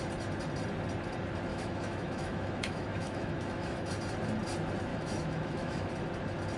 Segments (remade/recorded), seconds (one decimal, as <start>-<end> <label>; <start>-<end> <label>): 0.0-1.5 recorded; 1.5-3.9 remade; 3.9-4.9 recorded; 4.9-5.9 remade; 5.9-6.6 recorded